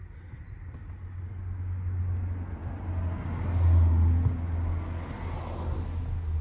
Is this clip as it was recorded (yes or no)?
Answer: yes